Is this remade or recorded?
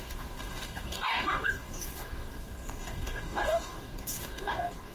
remade